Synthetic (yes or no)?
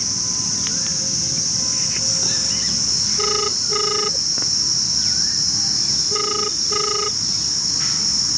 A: no